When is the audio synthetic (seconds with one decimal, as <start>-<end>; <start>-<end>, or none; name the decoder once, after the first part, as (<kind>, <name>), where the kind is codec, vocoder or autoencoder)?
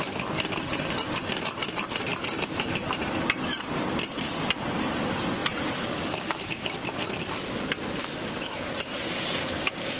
none